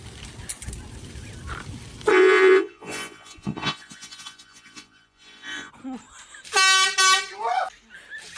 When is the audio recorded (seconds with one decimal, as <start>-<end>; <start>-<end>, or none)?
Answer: 0.0-2.1; 5.7-8.4